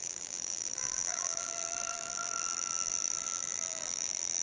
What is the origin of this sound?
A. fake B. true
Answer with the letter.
A